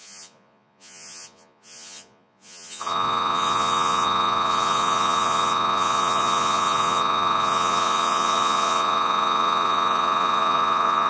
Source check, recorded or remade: remade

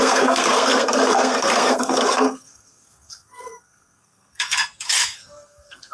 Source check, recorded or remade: remade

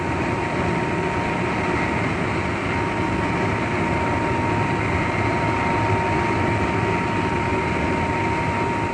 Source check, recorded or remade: recorded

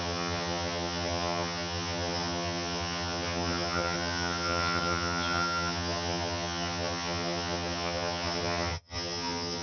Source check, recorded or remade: remade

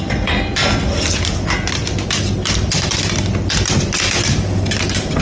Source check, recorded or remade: recorded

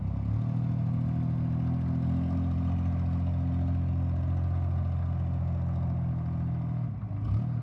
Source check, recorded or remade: recorded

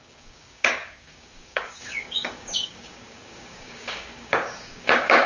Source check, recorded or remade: remade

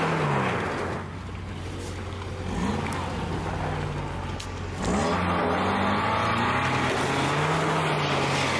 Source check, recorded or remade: recorded